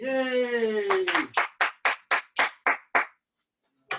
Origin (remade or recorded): recorded